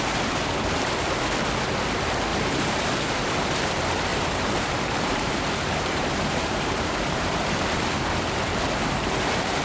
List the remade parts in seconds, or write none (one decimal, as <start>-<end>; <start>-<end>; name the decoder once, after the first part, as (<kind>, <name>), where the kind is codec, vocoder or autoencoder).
2.3-2.8 (vocoder, BigVGAN v2); 4.1-7.6

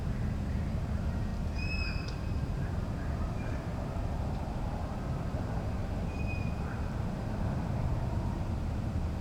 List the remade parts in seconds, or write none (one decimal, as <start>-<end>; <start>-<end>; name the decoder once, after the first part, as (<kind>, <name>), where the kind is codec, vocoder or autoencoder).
0.0-1.3 (vocoder, BigVGAN v2); 2.1-3.7; 4.6-5.8; 7.9-9.2

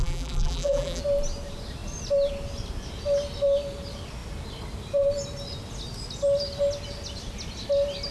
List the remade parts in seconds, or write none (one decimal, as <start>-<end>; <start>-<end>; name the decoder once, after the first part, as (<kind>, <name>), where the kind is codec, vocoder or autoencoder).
0.0-1.0 (vocoder, BigVGAN v2)

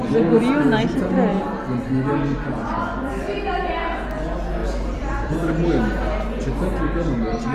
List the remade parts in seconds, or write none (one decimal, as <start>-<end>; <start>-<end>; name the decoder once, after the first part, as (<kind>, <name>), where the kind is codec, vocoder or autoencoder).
3.0-3.7 (vocoder, BigVGAN v2); 4.6-5.3